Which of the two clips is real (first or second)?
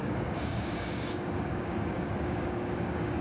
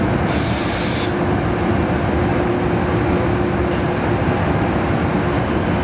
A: second